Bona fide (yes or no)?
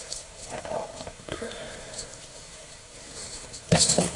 no